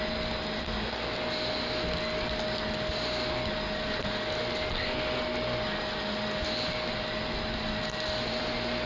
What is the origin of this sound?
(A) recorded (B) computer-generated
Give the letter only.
A